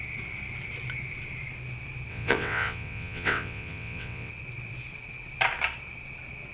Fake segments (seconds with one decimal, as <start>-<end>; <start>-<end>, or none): 2.1-4.3

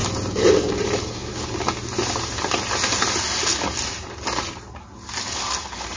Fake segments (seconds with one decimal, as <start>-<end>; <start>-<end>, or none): none

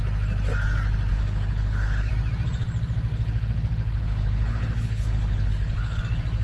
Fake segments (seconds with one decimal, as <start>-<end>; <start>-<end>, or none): 1.1-2.1; 3.1-6.0